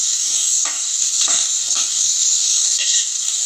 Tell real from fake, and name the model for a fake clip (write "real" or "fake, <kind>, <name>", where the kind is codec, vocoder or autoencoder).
fake, codec, DAC